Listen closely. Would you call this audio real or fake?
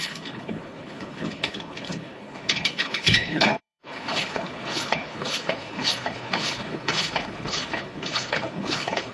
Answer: fake